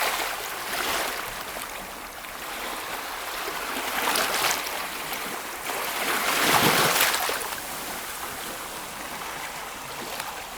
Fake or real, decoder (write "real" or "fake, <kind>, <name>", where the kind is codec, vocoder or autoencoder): real